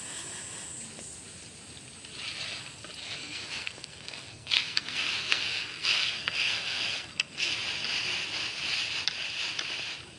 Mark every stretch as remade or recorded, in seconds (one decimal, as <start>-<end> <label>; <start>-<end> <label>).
0.0-3.0 recorded; 3.0-7.5 remade; 7.5-10.2 recorded